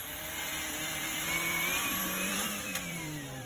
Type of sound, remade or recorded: remade